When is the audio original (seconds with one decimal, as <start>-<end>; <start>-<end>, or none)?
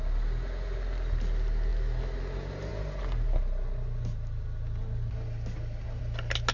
0.0-6.5